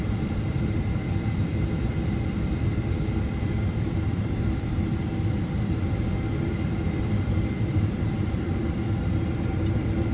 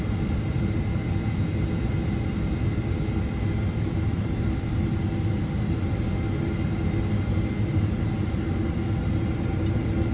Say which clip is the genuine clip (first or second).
second